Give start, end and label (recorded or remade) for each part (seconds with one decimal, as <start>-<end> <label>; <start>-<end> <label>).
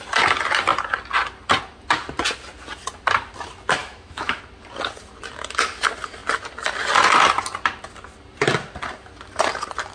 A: 0.0-3.8 recorded; 3.8-4.4 remade; 4.4-9.9 recorded